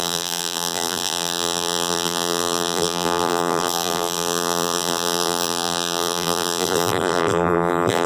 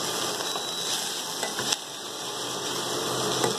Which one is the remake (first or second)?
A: first